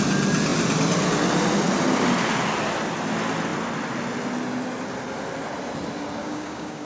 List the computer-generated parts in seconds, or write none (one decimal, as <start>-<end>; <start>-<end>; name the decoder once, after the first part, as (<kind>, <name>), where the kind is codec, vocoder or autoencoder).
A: 6.2-6.9 (codec, DAC)